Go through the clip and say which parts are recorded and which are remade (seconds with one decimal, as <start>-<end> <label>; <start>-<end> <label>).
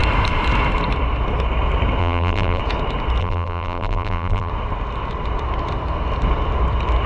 0.0-2.0 recorded; 2.0-2.6 remade; 2.6-3.2 recorded; 3.2-4.5 remade; 4.5-7.1 recorded